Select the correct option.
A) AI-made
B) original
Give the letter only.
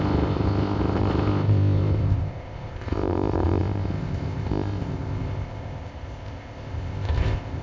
A